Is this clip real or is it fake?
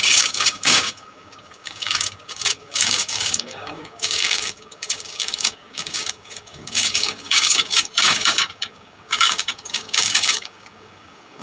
fake